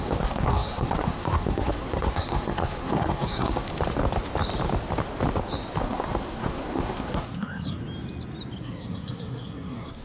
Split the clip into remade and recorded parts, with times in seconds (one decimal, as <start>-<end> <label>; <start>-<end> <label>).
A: 0.0-3.7 remade; 3.7-5.8 recorded; 5.8-7.8 remade; 7.8-8.6 recorded; 8.6-10.0 remade